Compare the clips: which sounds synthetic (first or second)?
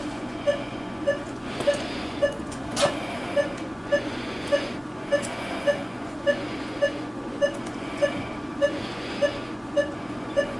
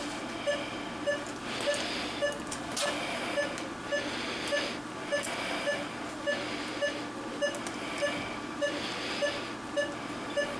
first